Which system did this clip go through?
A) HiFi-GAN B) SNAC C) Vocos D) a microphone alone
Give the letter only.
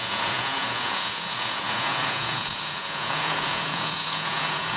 C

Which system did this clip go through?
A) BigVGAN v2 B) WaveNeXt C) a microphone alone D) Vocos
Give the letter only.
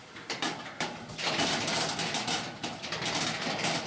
C